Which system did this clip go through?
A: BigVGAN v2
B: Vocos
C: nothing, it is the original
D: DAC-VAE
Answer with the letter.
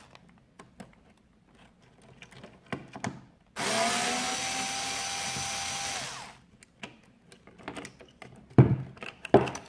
C